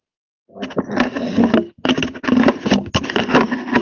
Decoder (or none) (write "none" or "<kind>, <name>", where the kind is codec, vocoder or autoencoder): none